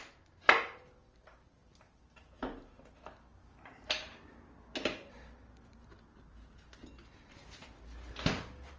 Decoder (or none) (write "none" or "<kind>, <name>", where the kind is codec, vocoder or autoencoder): none